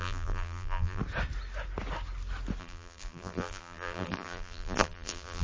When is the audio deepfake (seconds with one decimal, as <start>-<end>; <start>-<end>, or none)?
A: 0.0-1.0; 2.6-5.4

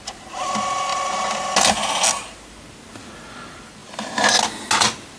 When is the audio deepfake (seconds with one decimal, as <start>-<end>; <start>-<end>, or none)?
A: 3.8-4.3

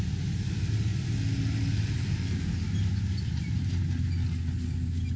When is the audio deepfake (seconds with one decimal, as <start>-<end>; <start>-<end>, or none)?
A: none

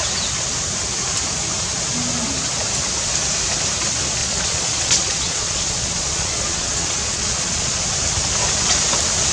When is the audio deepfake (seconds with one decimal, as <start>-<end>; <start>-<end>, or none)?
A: 4.2-7.8

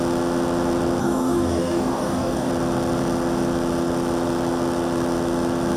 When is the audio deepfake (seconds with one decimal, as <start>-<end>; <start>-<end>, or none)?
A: 1.0-2.5